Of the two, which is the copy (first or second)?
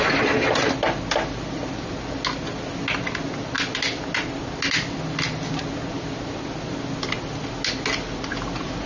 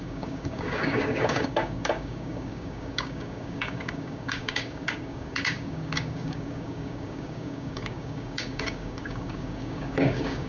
second